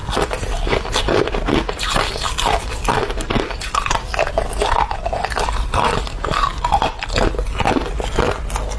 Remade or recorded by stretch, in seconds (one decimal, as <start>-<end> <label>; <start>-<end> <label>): 0.0-8.8 recorded